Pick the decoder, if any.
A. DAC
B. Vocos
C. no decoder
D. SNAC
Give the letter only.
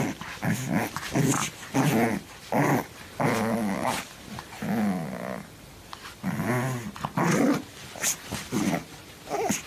C